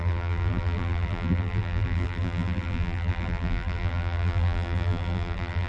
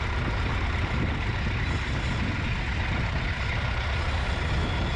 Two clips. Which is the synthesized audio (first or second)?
first